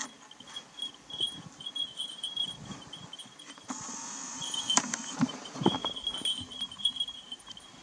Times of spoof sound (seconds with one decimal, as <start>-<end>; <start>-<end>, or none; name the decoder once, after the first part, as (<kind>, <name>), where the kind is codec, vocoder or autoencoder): 1.2-5.8 (vocoder, BigVGAN v2); 6.6-7.8